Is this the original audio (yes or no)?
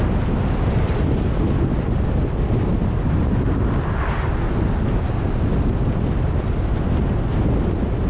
yes